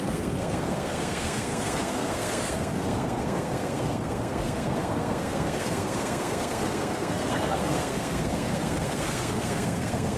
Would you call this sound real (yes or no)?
no